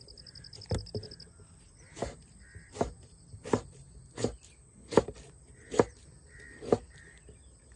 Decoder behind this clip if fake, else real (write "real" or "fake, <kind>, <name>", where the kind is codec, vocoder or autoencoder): real